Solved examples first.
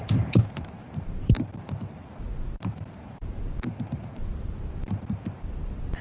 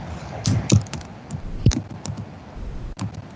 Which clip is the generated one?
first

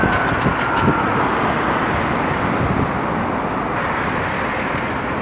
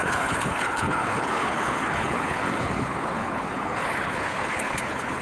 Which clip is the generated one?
second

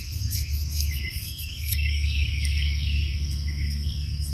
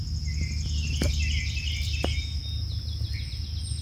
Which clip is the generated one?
first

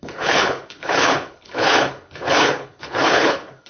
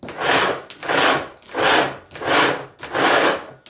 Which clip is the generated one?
first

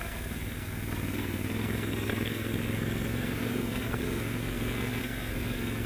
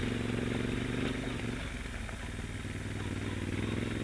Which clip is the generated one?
first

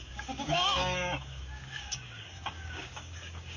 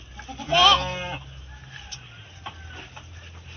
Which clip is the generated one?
first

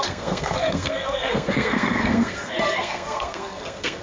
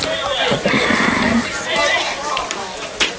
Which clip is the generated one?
first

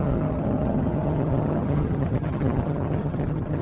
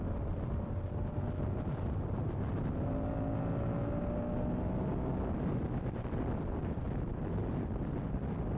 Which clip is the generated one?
first